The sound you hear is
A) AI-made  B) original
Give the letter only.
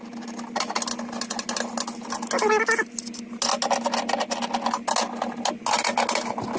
B